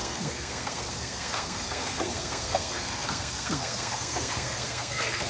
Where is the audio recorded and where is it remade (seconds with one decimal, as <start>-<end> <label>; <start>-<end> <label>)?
0.0-5.3 remade